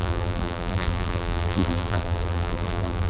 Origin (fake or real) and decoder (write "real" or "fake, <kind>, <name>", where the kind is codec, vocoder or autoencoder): fake, vocoder, BigVGAN v2